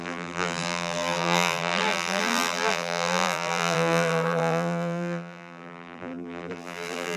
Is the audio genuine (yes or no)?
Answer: no